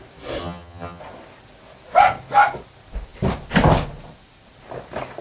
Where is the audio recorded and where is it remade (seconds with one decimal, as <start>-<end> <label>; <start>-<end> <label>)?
0.0-0.4 recorded; 0.4-1.0 remade; 1.0-5.2 recorded